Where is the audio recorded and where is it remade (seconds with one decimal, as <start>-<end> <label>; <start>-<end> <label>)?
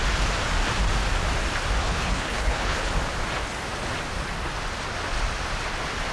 0.0-1.8 recorded; 1.8-2.9 remade; 2.9-6.1 recorded